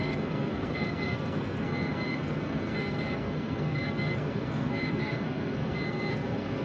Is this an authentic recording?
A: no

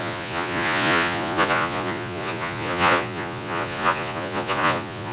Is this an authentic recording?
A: no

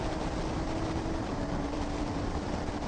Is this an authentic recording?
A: no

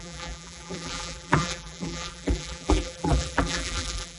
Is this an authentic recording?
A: no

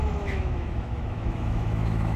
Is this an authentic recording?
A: no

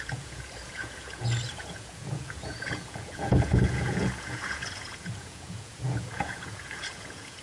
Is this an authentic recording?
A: no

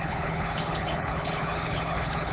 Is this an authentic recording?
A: no